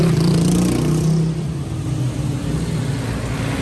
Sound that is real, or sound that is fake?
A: real